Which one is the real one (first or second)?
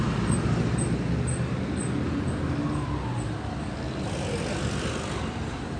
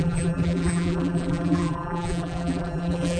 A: first